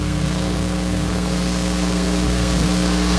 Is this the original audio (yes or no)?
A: no